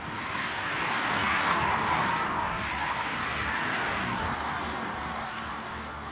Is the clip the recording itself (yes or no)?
no